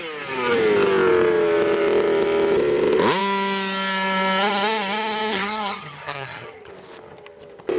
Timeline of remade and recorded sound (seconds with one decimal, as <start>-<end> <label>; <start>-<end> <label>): 0.0-5.2 recorded; 5.2-6.7 remade; 6.7-7.8 recorded

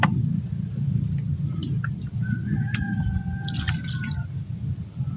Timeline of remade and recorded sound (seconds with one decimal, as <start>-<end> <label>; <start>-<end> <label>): 0.0-5.2 recorded

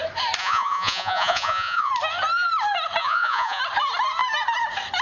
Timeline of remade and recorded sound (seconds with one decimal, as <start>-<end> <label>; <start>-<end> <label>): 0.0-0.4 recorded; 0.4-1.9 remade; 1.9-3.0 recorded; 3.0-3.6 remade; 3.6-5.0 recorded

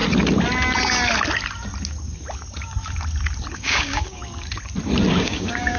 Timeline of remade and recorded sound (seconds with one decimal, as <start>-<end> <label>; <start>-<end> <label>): 0.0-3.5 recorded; 3.5-4.2 remade; 4.2-5.2 recorded; 5.2-5.8 remade

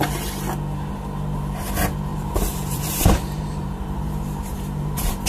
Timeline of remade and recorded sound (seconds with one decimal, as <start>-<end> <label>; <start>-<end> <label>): 0.0-2.1 recorded; 2.1-5.3 remade